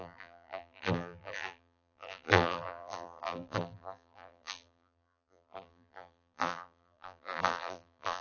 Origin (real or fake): fake